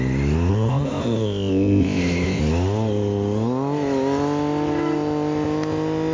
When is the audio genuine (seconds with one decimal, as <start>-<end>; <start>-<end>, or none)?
0.0-0.5; 2.4-6.1